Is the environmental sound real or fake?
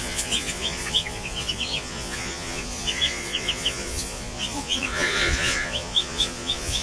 fake